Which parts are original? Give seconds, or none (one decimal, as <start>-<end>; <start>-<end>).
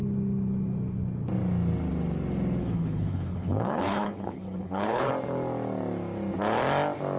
0.0-2.6; 5.1-7.2